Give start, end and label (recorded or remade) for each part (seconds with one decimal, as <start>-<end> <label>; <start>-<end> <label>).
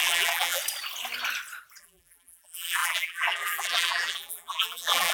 0.0-0.6 remade; 0.6-1.8 recorded; 1.8-5.1 remade